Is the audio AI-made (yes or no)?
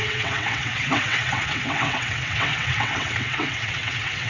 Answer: yes